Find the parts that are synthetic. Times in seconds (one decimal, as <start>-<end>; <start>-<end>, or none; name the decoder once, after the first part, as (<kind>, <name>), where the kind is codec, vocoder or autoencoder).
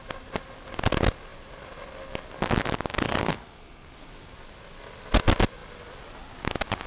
3.0-4.1 (codec, SNAC)